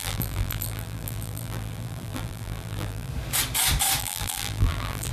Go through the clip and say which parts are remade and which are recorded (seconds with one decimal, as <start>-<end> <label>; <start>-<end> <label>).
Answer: 0.0-3.1 remade; 3.1-4.0 recorded; 4.0-5.1 remade